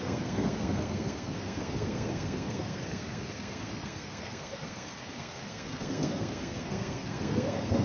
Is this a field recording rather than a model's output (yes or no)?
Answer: no